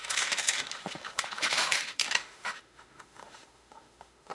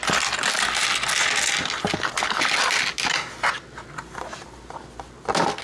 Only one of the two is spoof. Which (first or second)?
first